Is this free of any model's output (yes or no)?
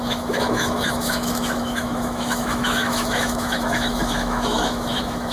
no